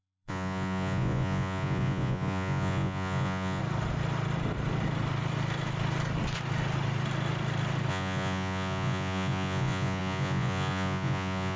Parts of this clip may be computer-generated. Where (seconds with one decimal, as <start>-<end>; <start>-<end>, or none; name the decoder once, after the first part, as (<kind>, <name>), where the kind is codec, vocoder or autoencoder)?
0.0-3.6 (vocoder, Vocos); 7.9-11.6